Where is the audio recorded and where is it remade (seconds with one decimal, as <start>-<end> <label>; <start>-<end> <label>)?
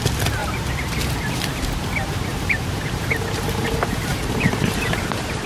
0.0-0.4 recorded; 0.4-1.1 remade; 1.1-2.0 recorded; 2.0-5.5 remade